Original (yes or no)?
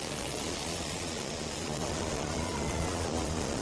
no